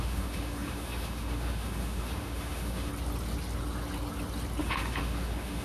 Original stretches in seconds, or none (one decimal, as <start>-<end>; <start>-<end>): 2.9-4.6